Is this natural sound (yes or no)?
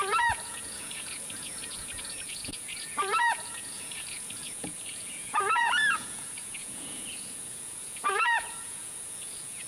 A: no